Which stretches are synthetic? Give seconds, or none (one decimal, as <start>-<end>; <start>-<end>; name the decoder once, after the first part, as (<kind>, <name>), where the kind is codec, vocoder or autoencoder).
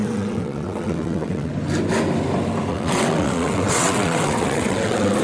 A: 0.0-1.5 (vocoder, WaveNeXt); 2.7-5.2